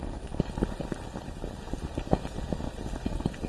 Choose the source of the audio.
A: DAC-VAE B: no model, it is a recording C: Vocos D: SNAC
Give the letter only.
B